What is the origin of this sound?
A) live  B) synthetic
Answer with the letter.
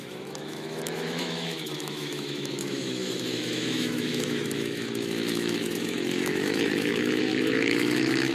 B